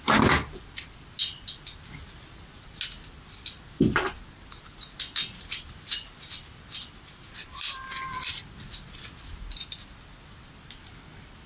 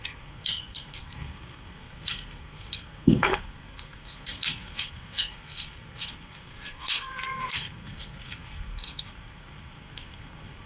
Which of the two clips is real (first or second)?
first